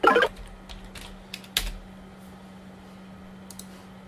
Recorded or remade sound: recorded